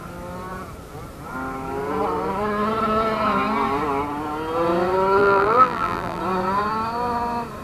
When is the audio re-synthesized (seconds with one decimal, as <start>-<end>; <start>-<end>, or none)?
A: 5.2-6.2